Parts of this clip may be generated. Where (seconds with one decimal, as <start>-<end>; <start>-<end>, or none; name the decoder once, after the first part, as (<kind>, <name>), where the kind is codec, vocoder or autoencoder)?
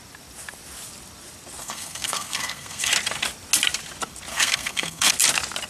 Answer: 1.6-2.9 (codec, SNAC); 4.3-5.1